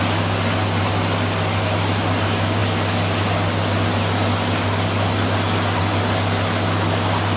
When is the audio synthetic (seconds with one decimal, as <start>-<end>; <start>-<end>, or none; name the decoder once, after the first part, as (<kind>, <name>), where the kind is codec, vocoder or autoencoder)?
none